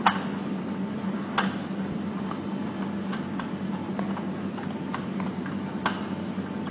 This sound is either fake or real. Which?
real